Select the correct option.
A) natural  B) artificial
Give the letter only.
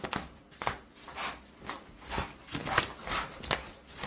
A